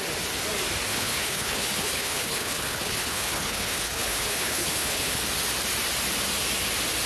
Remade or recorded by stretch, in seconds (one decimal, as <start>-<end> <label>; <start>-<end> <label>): 0.0-0.9 recorded; 0.9-5.2 remade; 5.2-7.1 recorded